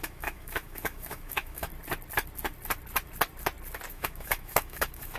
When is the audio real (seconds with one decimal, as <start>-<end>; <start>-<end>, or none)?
1.7-3.9